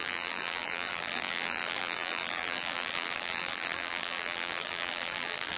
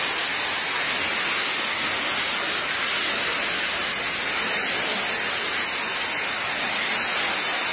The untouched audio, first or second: second